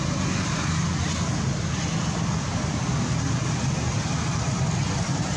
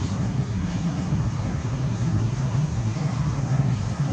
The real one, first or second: first